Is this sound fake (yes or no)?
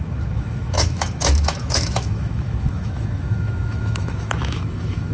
yes